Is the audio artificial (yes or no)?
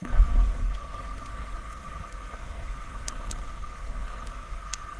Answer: yes